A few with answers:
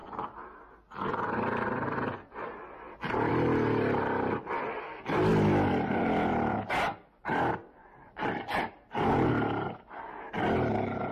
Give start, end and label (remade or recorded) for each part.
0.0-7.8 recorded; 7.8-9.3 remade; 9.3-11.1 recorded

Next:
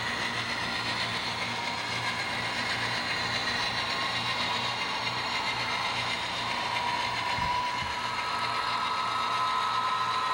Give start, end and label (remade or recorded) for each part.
0.0-3.4 recorded; 3.4-7.7 remade; 7.7-10.3 recorded

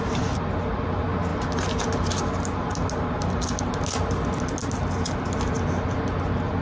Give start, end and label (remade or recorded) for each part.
0.0-6.6 recorded

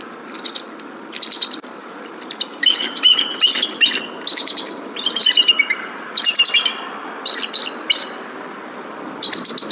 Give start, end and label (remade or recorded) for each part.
0.0-1.8 recorded; 1.8-6.4 remade; 6.4-9.7 recorded